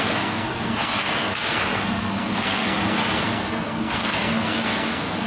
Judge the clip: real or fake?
fake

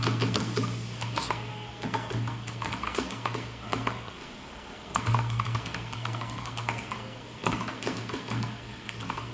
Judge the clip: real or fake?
fake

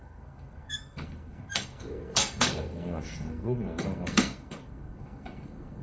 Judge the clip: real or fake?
fake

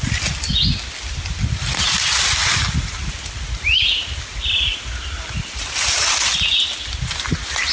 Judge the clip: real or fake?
real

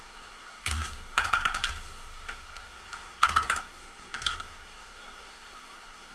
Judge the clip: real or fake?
fake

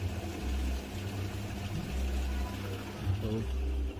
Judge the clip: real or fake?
real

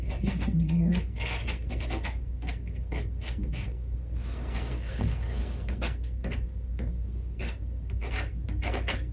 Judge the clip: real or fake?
fake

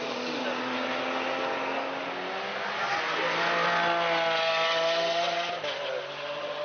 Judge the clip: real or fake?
real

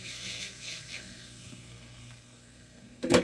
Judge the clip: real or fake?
fake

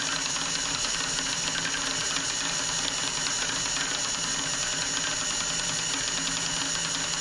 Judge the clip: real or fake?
real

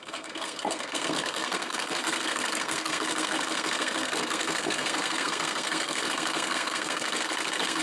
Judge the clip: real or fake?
fake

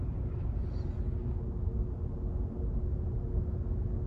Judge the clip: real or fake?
real